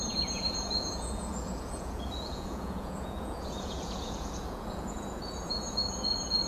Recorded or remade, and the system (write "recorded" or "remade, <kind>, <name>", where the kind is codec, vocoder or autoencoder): remade, vocoder, Vocos